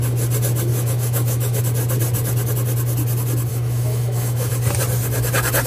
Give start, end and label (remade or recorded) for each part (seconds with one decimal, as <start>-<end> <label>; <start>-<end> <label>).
0.0-0.7 recorded; 0.7-1.6 remade; 1.6-3.5 recorded; 3.5-4.5 remade; 4.5-5.7 recorded